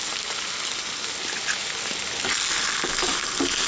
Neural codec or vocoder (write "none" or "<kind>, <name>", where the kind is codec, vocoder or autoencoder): none